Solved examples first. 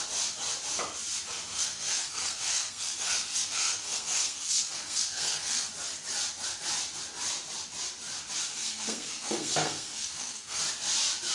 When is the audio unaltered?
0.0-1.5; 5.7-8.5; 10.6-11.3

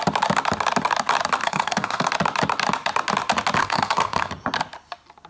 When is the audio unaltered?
0.0-1.4; 2.1-3.6; 4.3-5.3

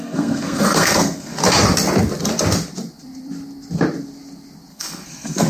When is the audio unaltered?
1.4-4.7

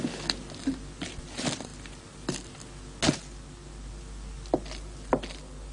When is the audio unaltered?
0.0-5.7

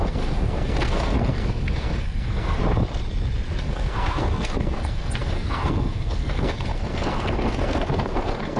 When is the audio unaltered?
2.6-3.6

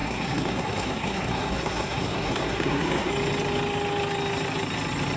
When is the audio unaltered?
3.1-5.2

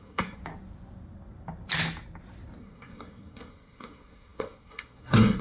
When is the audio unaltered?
0.4-2.6

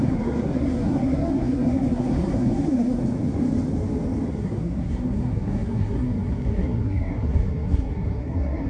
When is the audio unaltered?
3.0-4.3